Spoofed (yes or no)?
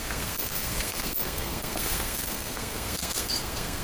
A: yes